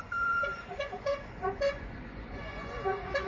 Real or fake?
fake